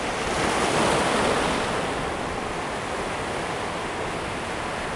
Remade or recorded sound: recorded